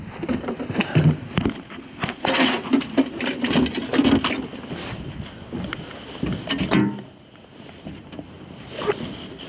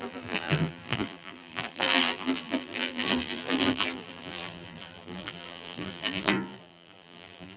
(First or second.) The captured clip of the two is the first